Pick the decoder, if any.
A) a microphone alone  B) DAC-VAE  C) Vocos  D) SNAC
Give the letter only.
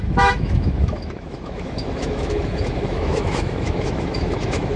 B